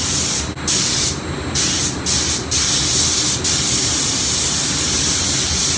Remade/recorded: recorded